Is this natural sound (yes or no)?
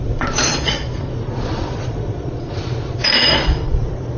no